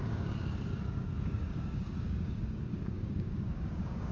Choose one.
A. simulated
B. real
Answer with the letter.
A